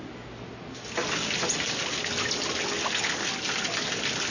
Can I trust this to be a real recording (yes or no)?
yes